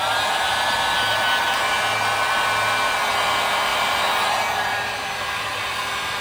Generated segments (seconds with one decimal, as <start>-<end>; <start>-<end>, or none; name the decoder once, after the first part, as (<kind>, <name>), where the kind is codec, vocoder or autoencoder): 3.7-6.2 (vocoder, BigVGAN v2)